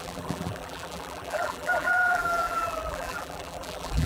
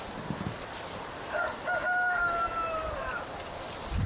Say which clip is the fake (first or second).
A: first